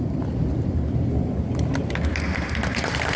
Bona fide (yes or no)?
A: yes